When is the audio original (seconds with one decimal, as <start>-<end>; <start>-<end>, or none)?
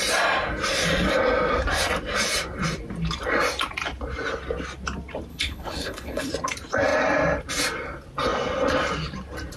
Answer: 0.0-5.3; 6.3-9.6